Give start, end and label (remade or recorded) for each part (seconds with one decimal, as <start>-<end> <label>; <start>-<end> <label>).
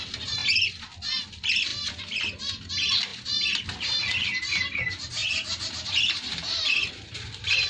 0.0-7.7 recorded